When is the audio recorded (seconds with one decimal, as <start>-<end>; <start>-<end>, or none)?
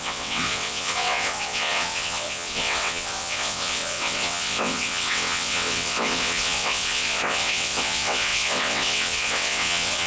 none